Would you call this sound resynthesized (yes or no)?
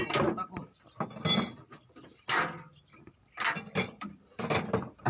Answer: no